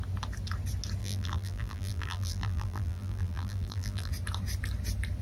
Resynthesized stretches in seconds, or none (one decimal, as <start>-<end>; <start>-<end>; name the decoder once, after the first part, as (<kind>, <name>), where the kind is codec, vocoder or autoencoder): 1.0-4.1 (vocoder, BigVGAN v2)

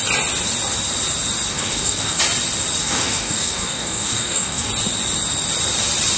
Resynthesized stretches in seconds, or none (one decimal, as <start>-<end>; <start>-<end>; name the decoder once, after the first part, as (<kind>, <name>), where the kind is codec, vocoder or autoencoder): 1.5-2.2 (codec, DAC); 2.8-4.7

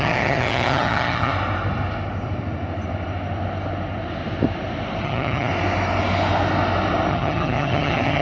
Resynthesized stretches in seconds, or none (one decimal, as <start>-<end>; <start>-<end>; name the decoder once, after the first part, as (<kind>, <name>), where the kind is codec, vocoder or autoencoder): 0.0-1.3 (vocoder, HiFi-GAN); 5.0-5.5; 7.1-8.2

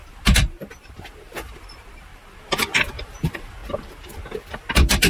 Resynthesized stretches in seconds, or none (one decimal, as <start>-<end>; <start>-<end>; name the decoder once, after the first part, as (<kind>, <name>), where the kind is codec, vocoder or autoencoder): 0.0-2.1 (vocoder, BigVGAN v2); 2.9-3.6; 4.4-5.1

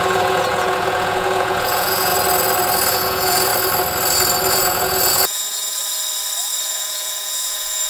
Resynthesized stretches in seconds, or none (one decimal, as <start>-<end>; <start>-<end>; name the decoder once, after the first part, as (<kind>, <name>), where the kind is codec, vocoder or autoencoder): 0.0-2.1 (vocoder, Vocos); 2.9-3.5; 4.5-5.8; 6.6-7.9

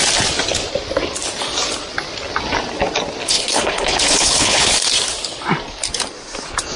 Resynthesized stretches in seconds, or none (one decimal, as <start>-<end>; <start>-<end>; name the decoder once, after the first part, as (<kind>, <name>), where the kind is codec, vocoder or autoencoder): 3.2-4.7 (codec, HILCodec)

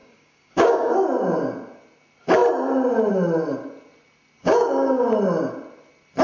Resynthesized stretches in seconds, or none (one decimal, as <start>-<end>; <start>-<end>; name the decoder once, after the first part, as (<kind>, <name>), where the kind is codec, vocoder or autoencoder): 0.0-0.9 (codec, DAC); 4.4-5.1